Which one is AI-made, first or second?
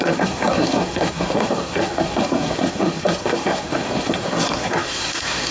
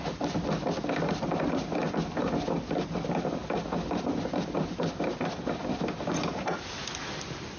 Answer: first